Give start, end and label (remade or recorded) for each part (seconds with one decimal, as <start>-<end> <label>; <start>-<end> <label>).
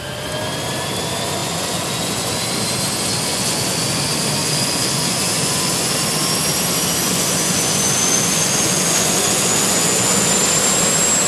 0.0-1.4 recorded; 1.4-2.4 remade; 2.4-3.3 recorded; 3.3-4.0 remade; 4.0-4.4 recorded; 4.4-5.9 remade; 5.9-7.0 recorded; 7.0-10.3 remade; 10.3-11.3 recorded